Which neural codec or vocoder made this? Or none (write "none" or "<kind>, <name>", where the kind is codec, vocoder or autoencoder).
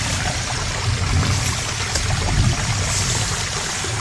none